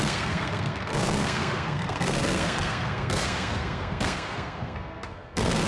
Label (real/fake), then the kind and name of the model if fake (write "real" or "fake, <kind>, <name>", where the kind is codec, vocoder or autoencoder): fake, codec, SNAC